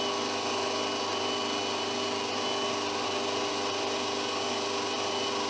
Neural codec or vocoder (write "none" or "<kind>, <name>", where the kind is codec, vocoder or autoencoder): none